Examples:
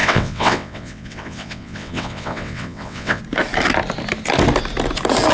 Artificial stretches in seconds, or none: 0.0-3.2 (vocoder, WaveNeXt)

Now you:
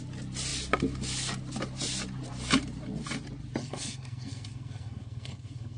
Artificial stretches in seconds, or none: 3.6-5.8 (codec, SNAC)